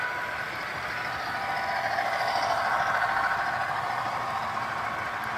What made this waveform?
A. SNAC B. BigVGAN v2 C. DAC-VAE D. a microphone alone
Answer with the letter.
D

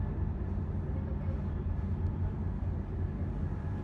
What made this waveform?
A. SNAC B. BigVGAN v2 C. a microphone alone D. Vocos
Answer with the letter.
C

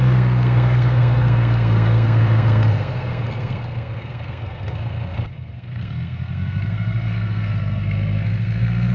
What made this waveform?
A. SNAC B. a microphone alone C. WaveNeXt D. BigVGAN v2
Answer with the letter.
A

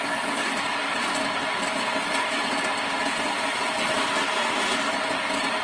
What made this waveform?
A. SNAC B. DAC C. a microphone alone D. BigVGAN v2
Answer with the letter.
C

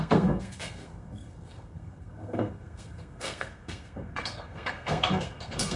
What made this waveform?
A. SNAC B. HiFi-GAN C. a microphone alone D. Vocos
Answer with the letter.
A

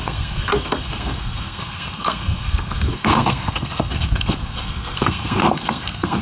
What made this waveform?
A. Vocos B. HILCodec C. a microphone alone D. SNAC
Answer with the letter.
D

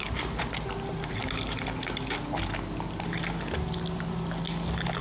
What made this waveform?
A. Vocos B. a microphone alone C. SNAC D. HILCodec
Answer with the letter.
B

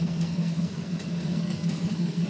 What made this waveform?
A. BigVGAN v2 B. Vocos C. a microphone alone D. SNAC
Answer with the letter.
D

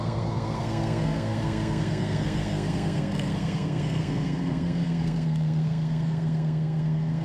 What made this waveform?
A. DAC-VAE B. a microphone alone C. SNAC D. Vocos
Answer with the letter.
C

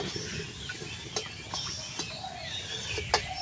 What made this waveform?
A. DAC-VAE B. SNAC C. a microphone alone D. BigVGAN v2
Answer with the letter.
C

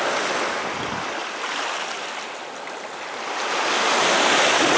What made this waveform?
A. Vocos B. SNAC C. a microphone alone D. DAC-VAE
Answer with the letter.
C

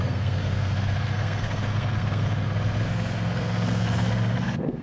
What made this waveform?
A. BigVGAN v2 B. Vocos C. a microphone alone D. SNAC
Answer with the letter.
D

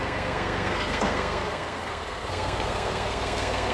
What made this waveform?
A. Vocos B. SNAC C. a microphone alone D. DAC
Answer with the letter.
B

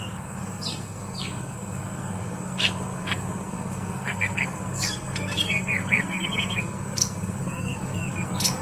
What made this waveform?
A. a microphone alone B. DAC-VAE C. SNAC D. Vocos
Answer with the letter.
C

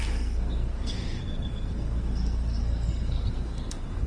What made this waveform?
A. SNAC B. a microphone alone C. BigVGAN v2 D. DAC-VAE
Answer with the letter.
A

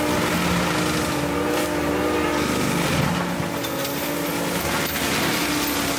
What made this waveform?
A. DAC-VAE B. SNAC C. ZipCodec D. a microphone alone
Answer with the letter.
D